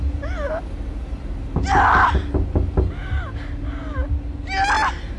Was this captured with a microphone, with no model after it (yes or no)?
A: yes